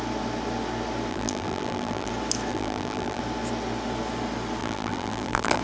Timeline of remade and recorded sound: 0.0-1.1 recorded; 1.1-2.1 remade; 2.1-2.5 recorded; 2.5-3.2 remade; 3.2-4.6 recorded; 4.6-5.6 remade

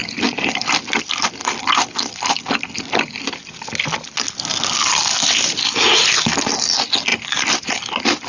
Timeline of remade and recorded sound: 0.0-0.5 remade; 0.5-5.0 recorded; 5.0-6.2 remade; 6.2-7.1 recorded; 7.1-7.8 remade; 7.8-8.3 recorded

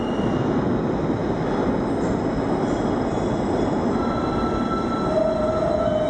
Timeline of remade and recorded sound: 0.0-6.1 recorded

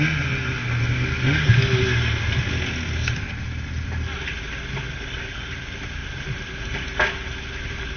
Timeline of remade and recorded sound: 0.0-6.0 recorded; 6.0-6.8 remade; 6.8-8.0 recorded